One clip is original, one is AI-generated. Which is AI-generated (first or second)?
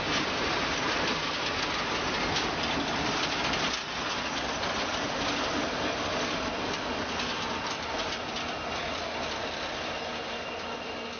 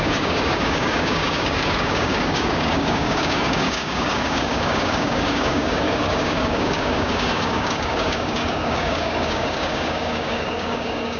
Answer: second